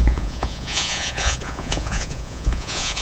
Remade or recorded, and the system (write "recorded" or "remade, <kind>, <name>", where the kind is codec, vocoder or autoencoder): remade, vocoder, Vocos